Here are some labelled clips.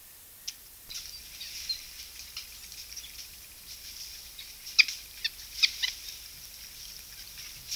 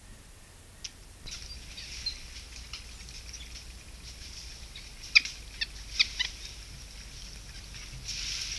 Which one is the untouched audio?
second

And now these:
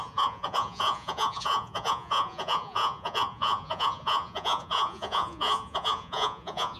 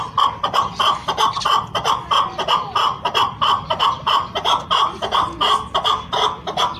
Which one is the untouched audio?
second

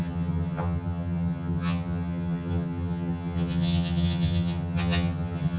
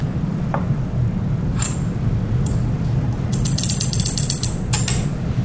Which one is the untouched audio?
second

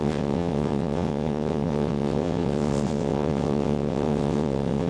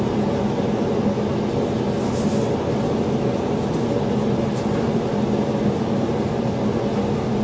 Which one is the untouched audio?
second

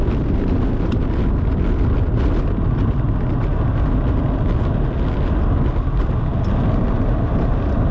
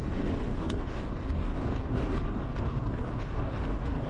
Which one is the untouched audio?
first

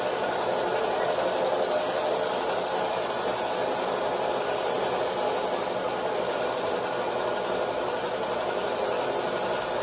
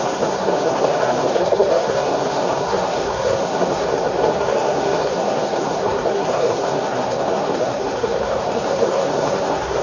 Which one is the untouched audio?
first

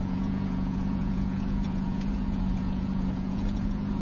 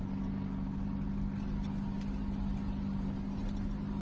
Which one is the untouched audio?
second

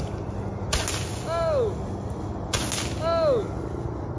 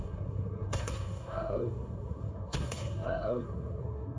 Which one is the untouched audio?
first